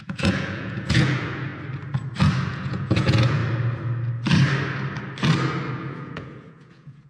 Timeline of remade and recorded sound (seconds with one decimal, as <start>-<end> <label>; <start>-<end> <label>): 0.0-1.5 remade; 1.5-2.5 recorded; 2.5-3.4 remade; 3.4-5.7 recorded; 5.7-7.1 remade